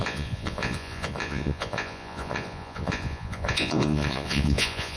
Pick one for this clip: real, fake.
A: fake